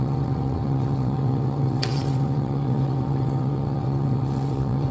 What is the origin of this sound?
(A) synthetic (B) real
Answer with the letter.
A